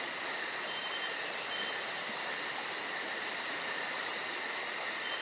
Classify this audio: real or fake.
real